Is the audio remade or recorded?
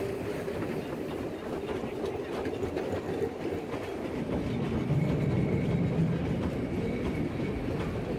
recorded